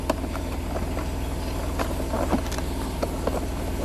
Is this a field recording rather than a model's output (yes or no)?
yes